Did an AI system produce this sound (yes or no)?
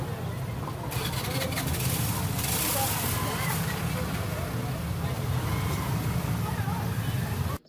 no